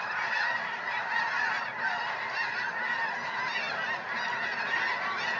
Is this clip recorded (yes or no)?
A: yes